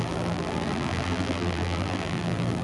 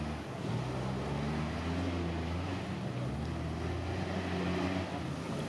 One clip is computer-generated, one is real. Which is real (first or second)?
second